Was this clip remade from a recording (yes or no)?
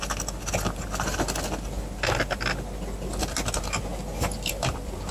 no